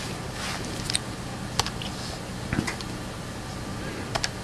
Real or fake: real